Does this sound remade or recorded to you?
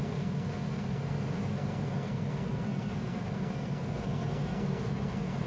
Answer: remade